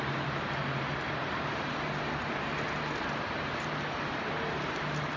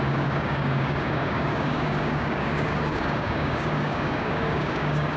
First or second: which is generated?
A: second